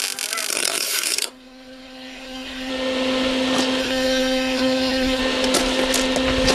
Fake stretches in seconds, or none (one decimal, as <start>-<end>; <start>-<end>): 0.5-2.7; 3.8-5.2